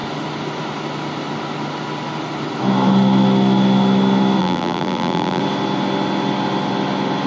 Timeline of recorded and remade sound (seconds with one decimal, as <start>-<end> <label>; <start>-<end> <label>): 0.0-4.4 recorded; 4.4-5.4 remade; 5.4-7.3 recorded